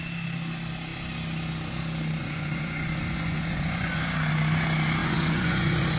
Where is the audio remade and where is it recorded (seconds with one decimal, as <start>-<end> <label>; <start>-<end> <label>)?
0.0-2.2 recorded; 2.2-4.3 remade; 4.3-5.0 recorded; 5.0-6.0 remade

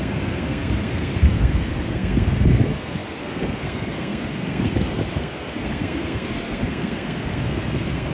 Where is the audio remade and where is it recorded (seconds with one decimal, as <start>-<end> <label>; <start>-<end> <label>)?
0.0-8.1 remade

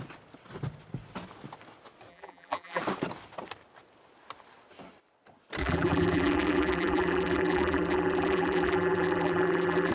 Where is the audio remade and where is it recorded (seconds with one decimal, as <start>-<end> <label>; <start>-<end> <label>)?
0.0-2.1 recorded; 2.1-2.8 remade; 2.8-5.6 recorded; 5.6-9.9 remade

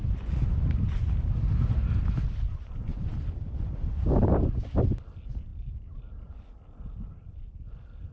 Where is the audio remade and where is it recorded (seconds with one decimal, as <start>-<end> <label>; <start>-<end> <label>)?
0.0-8.1 recorded

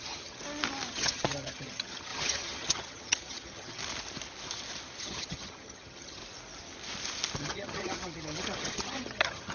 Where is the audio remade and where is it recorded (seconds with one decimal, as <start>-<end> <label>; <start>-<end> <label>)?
0.0-0.4 remade; 0.4-0.9 recorded; 0.9-3.8 remade; 3.8-5.0 recorded; 5.0-6.2 remade; 6.2-7.4 recorded; 7.4-9.5 remade

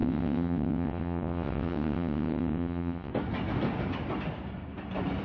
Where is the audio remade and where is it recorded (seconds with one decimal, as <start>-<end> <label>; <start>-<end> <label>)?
0.0-3.1 remade; 3.1-5.2 recorded

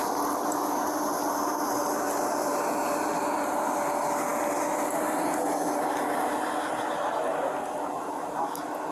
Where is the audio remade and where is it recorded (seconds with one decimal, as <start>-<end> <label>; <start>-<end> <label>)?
0.0-8.9 recorded

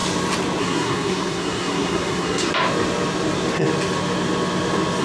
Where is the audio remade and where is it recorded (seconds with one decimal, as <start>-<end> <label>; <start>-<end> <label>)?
0.0-0.6 recorded; 0.6-2.5 remade; 2.5-5.0 recorded